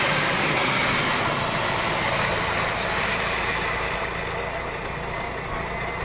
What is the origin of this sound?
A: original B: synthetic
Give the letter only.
A